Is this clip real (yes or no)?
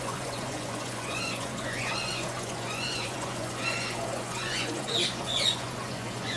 no